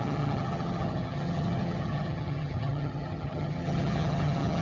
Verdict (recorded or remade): remade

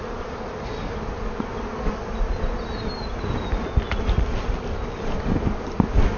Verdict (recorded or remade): recorded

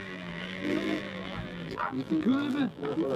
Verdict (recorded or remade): remade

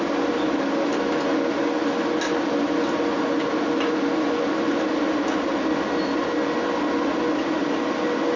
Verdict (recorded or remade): recorded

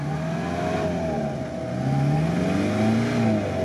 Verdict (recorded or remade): recorded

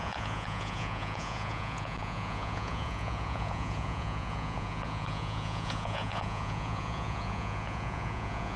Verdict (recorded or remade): remade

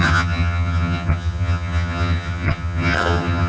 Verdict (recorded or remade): remade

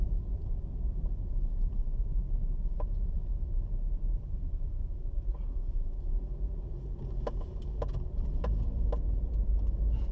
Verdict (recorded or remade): remade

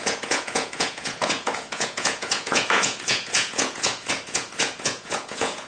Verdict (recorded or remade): remade